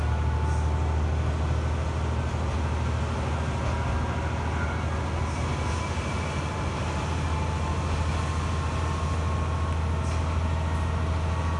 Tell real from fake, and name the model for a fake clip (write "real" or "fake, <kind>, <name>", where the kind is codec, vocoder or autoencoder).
real